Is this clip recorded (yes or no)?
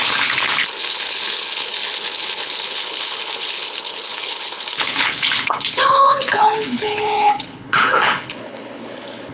no